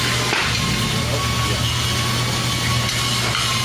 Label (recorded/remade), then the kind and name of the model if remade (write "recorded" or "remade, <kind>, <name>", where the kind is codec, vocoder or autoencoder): recorded